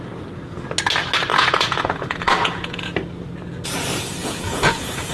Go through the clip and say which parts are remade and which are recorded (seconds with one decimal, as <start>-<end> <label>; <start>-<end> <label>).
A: 0.0-1.3 recorded; 1.3-2.9 remade; 2.9-4.2 recorded; 4.2-5.1 remade